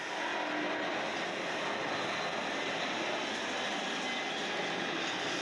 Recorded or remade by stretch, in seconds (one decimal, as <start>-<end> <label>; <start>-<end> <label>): 0.0-5.4 recorded